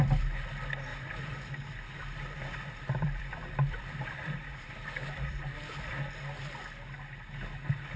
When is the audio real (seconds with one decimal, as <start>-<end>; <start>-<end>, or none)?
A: 0.0-0.9; 1.5-2.0; 5.4-8.0